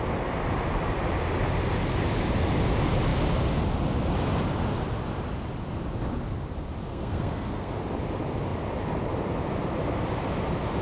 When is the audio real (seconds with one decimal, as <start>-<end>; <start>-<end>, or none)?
0.0-6.9; 7.7-10.8